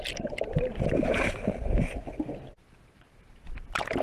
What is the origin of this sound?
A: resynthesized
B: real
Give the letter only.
B